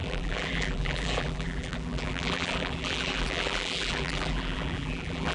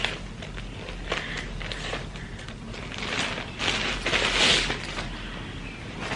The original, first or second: second